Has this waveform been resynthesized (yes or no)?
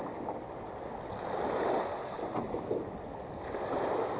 no